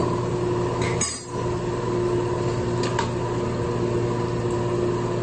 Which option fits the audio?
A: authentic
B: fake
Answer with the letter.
A